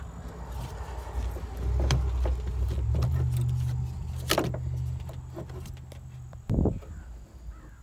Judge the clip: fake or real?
real